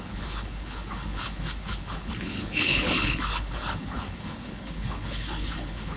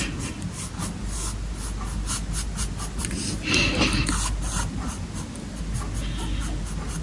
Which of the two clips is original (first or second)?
second